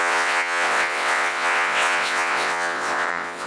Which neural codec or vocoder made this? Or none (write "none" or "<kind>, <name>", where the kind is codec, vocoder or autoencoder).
vocoder, WaveNeXt